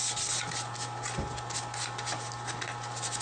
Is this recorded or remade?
recorded